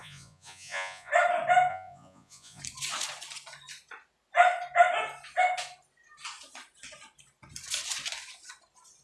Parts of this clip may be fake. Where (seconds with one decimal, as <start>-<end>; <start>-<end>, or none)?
0.0-1.1; 1.7-2.6